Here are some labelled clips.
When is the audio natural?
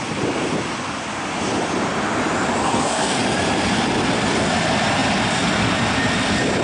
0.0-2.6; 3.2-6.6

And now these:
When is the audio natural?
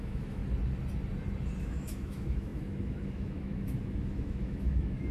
0.4-1.6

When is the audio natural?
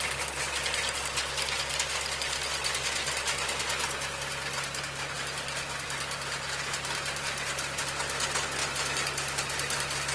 0.0-10.1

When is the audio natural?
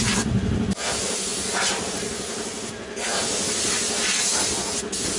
0.0-5.2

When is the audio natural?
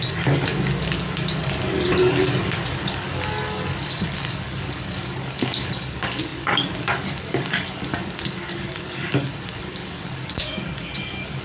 none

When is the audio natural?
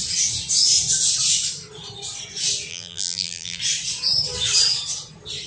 0.0-2.7; 3.6-5.5